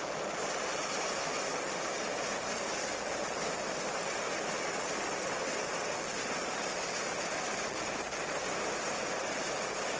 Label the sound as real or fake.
real